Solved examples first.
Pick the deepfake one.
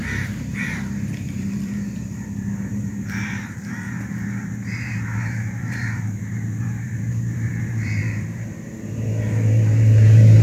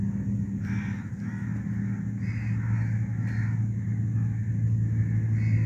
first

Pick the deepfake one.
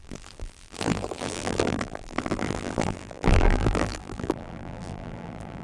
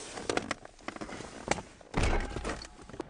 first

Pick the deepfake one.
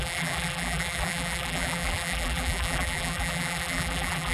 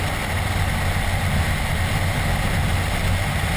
first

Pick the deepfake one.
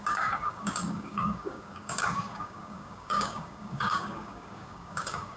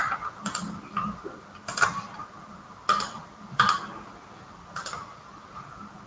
first